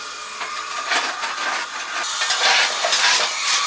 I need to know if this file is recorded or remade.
recorded